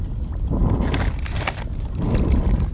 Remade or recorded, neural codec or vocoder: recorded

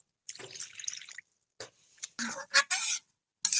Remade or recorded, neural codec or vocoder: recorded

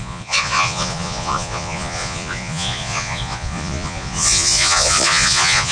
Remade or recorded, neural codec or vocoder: remade, vocoder, Vocos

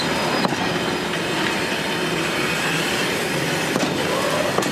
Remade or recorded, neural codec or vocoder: recorded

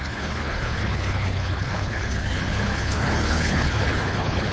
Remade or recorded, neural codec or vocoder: remade, codec, HILCodec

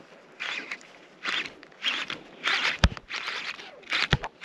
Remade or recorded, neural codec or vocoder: remade, vocoder, BigVGAN v2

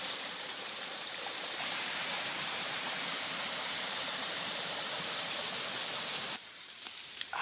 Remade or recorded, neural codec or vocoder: remade, vocoder, BigVGAN v2